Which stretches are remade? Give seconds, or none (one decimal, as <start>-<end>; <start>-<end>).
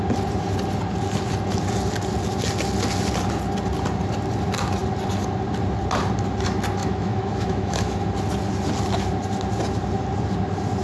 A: 6.8-8.1